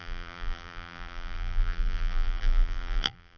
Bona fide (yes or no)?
no